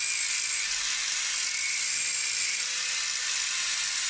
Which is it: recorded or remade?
recorded